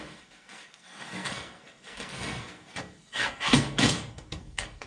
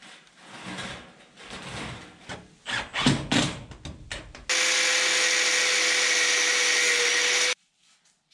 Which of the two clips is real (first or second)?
second